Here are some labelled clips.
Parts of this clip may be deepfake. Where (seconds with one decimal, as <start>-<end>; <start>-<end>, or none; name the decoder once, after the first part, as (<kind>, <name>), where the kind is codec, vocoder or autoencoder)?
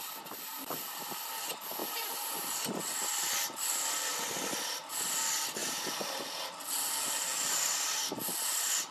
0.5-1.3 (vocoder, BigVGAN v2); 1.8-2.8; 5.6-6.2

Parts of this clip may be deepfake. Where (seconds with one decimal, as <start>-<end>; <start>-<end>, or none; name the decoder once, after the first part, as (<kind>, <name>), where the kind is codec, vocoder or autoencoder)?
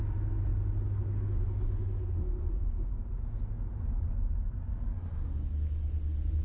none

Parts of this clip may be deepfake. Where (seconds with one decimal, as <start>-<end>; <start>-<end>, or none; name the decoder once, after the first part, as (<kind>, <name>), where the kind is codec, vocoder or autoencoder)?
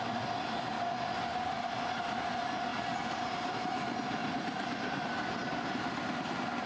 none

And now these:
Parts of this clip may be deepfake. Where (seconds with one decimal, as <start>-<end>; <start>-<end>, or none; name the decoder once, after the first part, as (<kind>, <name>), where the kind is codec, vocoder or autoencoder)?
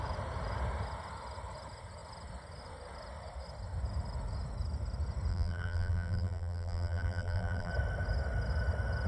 5.3-7.7 (vocoder, BigVGAN v2)